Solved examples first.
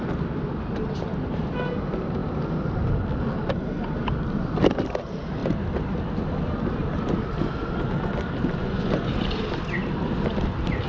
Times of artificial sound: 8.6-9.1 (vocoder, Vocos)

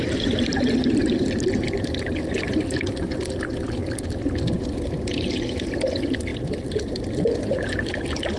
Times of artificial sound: none

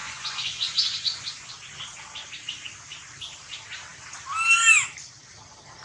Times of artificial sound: 0.0-1.5 (vocoder, Vocos)

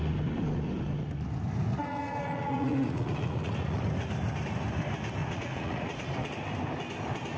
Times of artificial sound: 1.7-3.8 (vocoder, Vocos); 5.2-6.3